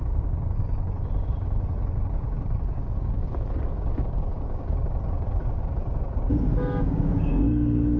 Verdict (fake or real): fake